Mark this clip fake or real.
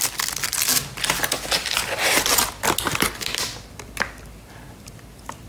real